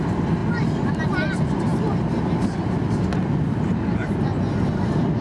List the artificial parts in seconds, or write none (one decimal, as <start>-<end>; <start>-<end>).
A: none